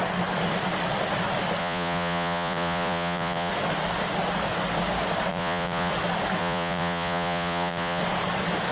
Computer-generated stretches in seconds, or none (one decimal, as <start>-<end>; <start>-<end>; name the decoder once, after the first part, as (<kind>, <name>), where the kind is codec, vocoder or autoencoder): 1.6-3.5 (vocoder, Vocos); 5.3-5.9; 6.4-8.0